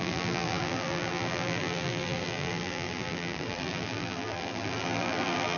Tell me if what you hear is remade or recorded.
remade